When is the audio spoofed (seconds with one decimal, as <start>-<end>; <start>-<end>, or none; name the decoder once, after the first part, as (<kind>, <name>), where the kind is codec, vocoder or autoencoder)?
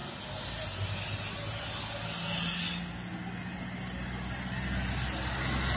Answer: none